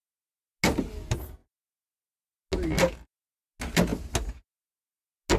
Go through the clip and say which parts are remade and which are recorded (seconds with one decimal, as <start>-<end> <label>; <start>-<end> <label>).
0.0-5.4 recorded